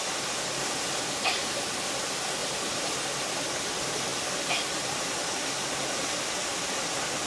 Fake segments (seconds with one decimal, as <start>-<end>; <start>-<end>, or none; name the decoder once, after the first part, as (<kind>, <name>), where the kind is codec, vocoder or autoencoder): 2.4-2.9 (vocoder, BigVGAN v2)